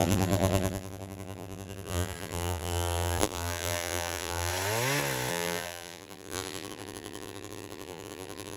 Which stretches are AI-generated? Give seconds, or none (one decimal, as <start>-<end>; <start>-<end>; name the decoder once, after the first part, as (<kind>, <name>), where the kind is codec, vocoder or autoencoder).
0.0-4.5 (vocoder, BigVGAN v2); 5.3-8.6